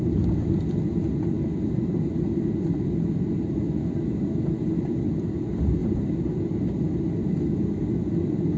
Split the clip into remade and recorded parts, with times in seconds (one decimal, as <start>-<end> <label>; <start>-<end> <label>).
0.0-8.6 recorded